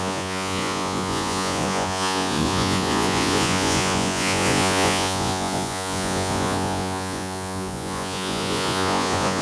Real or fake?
fake